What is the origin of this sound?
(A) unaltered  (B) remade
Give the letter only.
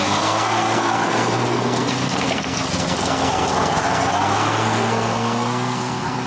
B